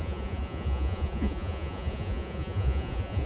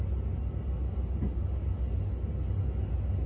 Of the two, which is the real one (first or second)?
second